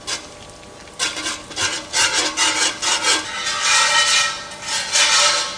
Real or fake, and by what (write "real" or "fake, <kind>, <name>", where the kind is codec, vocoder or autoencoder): real